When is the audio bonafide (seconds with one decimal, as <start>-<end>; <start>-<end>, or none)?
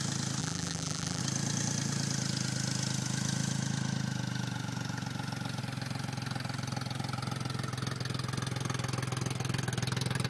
0.0-0.4; 1.2-10.3